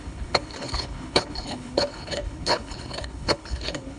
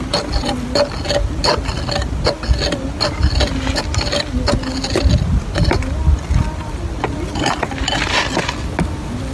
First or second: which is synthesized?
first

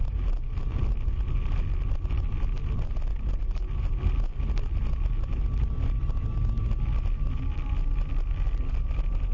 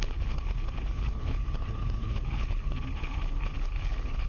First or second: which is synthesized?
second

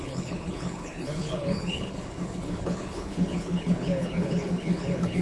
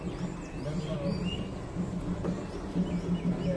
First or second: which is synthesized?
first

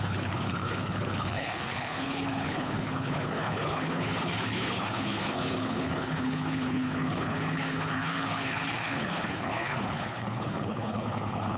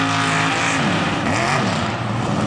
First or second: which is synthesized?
first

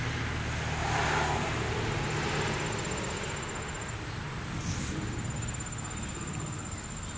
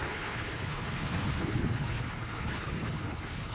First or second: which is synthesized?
second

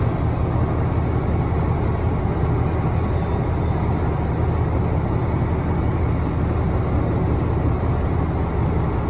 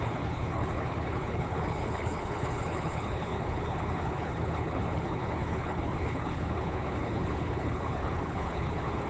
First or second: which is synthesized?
second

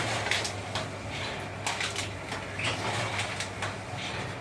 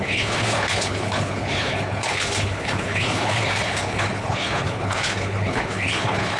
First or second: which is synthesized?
second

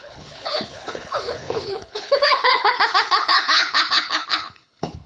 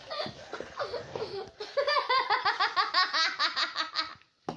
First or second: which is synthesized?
first